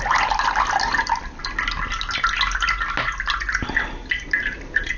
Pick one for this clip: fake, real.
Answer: real